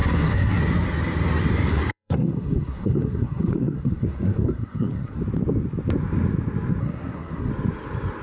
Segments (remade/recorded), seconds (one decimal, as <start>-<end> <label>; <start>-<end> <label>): 0.0-0.6 remade; 0.6-1.7 recorded; 1.7-5.2 remade; 5.2-6.8 recorded; 6.8-7.5 remade; 7.5-8.2 recorded